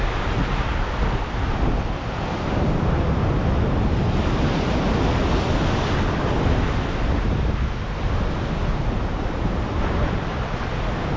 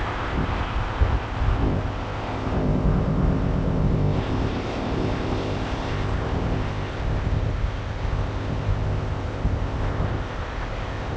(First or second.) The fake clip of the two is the second